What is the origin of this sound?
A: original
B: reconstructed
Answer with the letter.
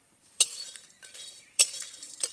B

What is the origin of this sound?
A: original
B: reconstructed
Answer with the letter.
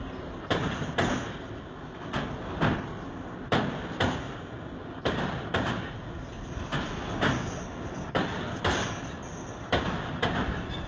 A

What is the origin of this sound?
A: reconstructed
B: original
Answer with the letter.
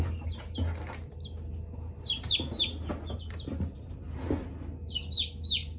B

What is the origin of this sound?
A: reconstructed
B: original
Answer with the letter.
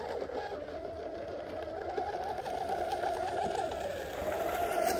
B